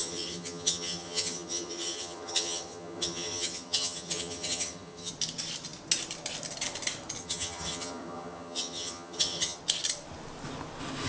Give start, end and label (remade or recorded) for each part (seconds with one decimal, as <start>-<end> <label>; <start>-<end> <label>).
0.0-5.1 remade; 5.1-7.2 recorded; 7.2-9.6 remade; 9.6-11.1 recorded